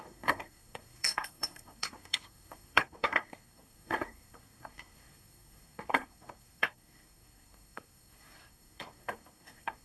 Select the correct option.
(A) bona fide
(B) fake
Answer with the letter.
B